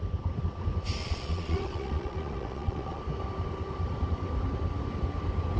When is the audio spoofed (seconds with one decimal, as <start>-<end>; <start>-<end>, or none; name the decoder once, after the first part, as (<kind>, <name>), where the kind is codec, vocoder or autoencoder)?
1.0-3.0 (vocoder, Vocos)